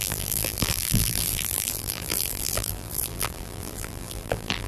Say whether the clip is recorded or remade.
remade